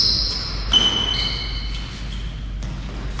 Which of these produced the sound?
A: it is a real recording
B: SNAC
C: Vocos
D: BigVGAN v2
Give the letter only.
A